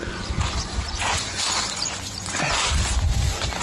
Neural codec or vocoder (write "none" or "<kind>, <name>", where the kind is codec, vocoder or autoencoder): vocoder, Vocos